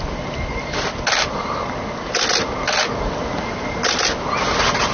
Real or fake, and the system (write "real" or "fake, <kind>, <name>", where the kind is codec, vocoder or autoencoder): real